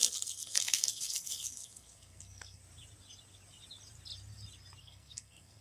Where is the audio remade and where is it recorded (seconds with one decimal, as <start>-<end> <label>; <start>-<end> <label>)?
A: 0.0-2.6 remade; 2.6-4.8 recorded; 4.8-5.6 remade